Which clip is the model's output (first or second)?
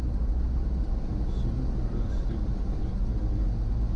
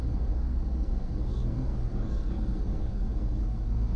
second